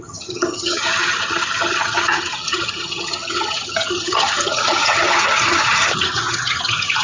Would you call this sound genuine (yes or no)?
no